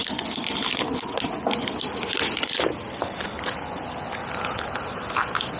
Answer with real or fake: real